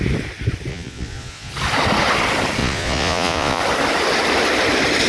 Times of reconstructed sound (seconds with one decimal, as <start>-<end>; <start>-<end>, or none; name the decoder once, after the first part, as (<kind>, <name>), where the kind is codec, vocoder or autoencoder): 0.7-1.5 (vocoder, Vocos); 2.6-3.6